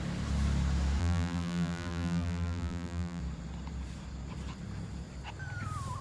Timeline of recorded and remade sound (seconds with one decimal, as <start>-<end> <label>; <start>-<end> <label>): 0.0-1.0 recorded; 1.0-3.2 remade; 3.2-6.0 recorded